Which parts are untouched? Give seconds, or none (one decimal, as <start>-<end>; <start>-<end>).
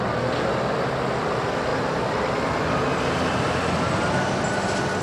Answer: 0.0-5.0